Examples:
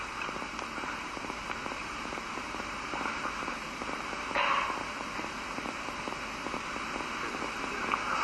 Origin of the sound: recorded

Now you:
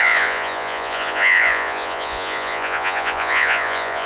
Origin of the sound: remade